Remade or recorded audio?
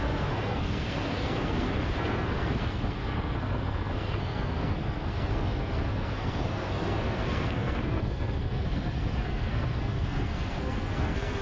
remade